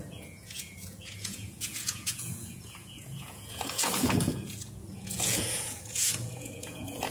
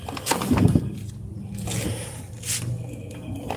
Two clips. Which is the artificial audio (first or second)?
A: first